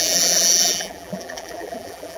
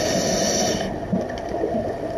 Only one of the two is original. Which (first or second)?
second